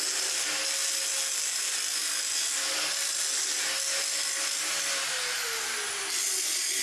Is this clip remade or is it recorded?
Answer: recorded